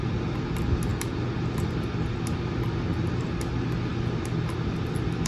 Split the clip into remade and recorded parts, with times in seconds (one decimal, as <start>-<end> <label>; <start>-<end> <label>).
0.0-5.3 recorded